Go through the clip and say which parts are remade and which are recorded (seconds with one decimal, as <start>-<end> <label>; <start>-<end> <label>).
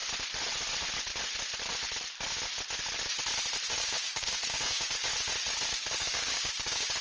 0.0-3.7 recorded; 3.7-5.1 remade; 5.1-5.7 recorded; 5.7-7.0 remade